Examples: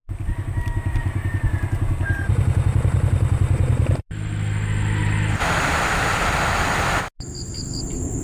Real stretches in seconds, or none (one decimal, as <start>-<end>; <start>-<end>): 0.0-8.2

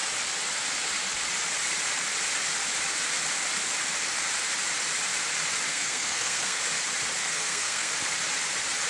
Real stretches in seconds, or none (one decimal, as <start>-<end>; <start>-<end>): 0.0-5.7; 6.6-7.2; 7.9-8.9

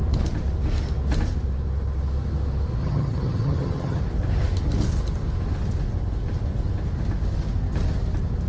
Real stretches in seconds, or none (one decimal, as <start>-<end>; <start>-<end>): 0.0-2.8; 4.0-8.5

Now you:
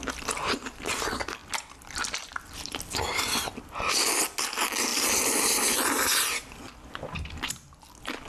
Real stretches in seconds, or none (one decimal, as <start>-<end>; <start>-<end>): 0.0-1.4; 3.6-4.9; 7.5-8.3

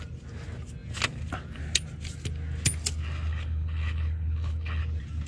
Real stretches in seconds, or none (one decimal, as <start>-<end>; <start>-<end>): 0.0-3.3; 4.8-5.3